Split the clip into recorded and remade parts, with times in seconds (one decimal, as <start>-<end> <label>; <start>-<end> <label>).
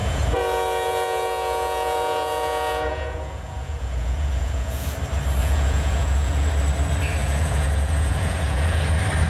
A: 0.0-4.9 remade; 4.9-5.4 recorded; 5.4-6.5 remade; 6.5-7.2 recorded; 7.2-8.8 remade; 8.8-9.3 recorded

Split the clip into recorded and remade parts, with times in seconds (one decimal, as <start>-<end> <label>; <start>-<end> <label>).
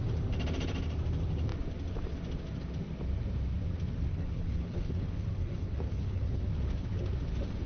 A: 0.0-4.1 recorded; 4.1-6.5 remade; 6.5-7.7 recorded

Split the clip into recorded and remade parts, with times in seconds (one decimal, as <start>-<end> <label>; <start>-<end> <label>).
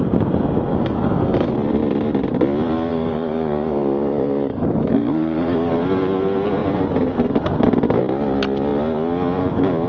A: 0.0-0.7 recorded; 0.7-1.5 remade; 1.5-2.9 recorded; 2.9-5.7 remade; 5.7-9.9 recorded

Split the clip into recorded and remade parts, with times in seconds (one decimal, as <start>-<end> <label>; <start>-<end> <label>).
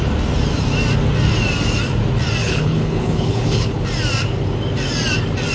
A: 0.0-2.4 recorded; 2.4-3.8 remade; 3.8-5.5 recorded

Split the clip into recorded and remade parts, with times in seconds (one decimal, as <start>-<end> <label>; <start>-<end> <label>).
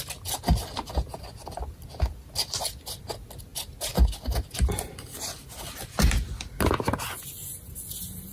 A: 0.0-8.3 recorded